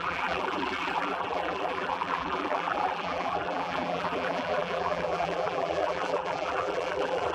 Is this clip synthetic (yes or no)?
yes